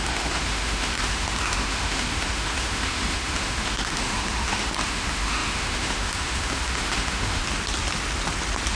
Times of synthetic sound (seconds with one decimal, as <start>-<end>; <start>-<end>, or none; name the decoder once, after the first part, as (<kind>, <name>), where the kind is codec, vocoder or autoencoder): 0.0-7.4 (autoencoder, DAC-VAE)